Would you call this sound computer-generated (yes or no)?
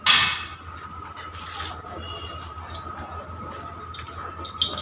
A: no